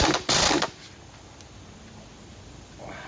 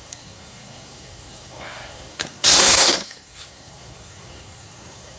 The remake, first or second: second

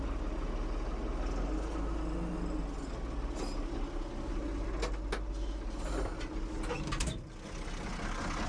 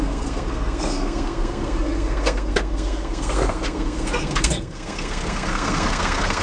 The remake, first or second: second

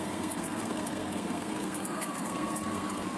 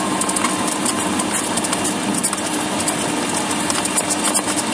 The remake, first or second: first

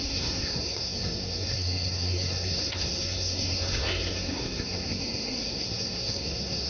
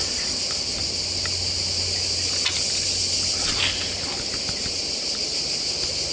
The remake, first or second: first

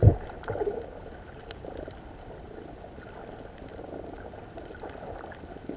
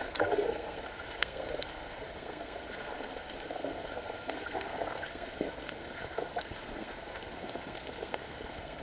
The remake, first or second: second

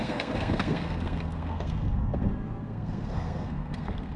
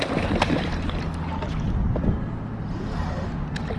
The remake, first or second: first